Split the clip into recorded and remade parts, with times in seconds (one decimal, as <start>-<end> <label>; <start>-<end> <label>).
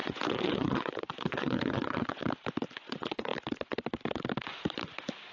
0.0-2.2 remade; 2.2-2.8 recorded; 2.8-3.3 remade; 3.3-5.3 recorded